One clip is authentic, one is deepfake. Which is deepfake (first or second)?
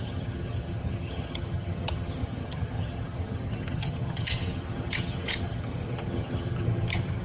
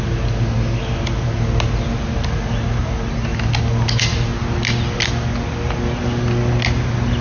first